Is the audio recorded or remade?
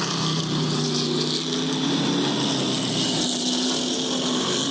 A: recorded